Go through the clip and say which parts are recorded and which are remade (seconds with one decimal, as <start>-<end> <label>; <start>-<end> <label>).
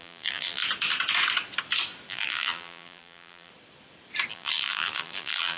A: 0.0-0.6 remade; 0.6-2.1 recorded; 2.1-3.5 remade; 3.5-4.3 recorded; 4.3-5.6 remade